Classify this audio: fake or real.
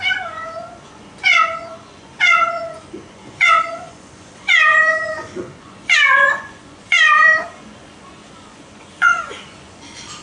fake